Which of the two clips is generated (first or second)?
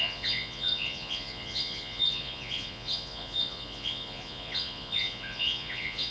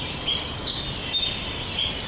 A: first